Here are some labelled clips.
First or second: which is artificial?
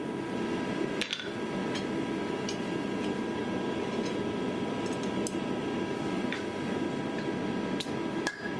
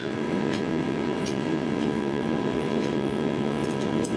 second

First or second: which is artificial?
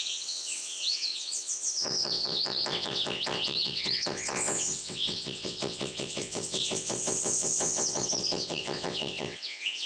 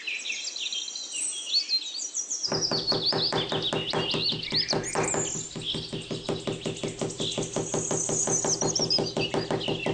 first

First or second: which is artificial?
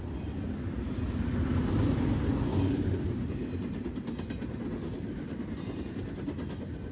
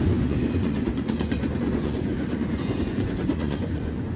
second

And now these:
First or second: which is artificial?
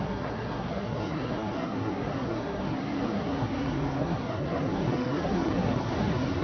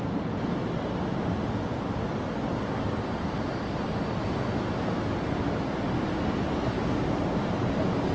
first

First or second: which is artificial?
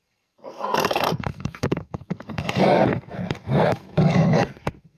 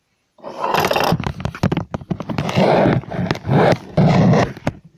first